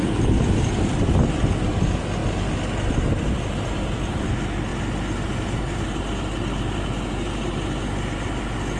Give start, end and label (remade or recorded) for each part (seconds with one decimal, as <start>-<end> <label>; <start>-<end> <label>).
0.0-8.8 recorded